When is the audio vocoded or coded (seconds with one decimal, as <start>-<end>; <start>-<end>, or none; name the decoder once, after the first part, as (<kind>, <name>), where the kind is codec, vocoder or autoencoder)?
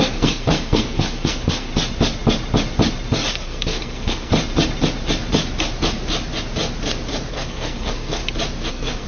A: 0.0-1.7 (codec, SNAC); 3.3-4.3; 7.3-8.2; 8.7-9.1